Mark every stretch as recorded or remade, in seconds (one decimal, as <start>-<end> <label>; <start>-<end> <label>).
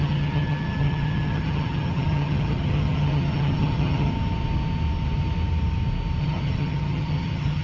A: 0.0-4.1 remade; 4.1-6.2 recorded; 6.2-7.6 remade